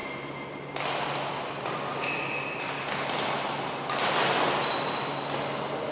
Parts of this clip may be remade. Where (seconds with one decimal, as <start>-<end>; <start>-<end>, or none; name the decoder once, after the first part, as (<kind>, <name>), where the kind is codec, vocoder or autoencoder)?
none